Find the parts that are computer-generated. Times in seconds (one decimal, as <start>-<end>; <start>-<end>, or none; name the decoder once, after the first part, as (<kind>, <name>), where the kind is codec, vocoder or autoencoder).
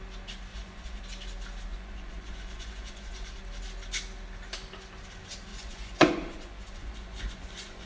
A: 0.5-1.0 (vocoder, Vocos); 1.7-3.4; 5.5-7.9